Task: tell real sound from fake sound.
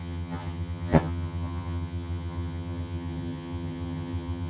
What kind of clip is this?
fake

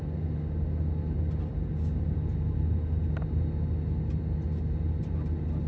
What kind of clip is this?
real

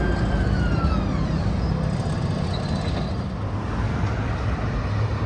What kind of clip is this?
real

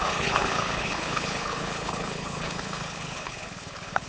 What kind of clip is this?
fake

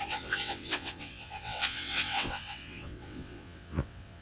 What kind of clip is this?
fake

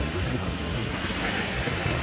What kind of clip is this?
fake